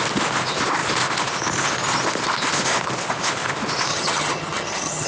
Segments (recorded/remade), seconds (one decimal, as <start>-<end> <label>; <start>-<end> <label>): 0.0-3.9 recorded; 3.9-5.1 remade